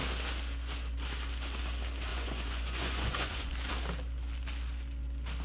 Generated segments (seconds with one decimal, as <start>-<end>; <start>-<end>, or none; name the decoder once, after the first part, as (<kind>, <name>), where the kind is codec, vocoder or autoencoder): 2.1-3.7 (vocoder, Vocos)